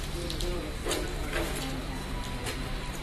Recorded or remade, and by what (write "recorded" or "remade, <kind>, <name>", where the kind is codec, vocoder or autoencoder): recorded